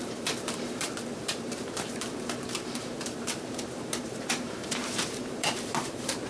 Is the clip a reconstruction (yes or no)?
yes